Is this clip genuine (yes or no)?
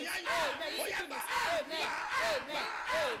no